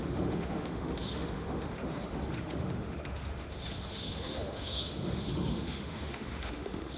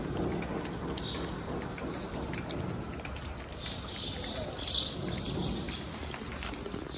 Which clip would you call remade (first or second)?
first